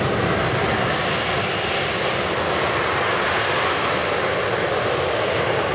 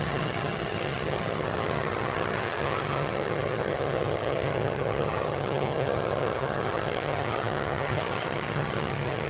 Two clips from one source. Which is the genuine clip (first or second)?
first